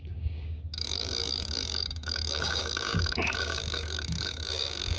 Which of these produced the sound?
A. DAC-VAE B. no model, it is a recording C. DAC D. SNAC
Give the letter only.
C